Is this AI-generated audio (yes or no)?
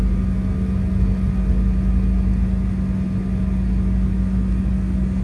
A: no